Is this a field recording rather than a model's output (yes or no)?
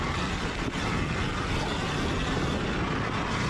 yes